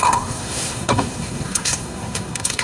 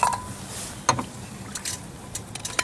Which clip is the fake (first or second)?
first